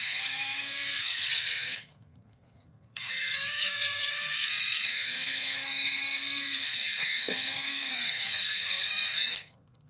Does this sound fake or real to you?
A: fake